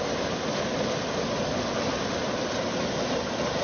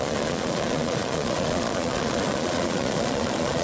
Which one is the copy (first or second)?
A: second